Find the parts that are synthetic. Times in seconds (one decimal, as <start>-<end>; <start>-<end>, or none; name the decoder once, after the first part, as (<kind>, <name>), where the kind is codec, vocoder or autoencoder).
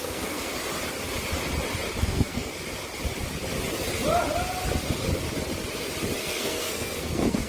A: 0.0-0.5 (codec, SNAC); 2.0-2.5; 6.2-7.5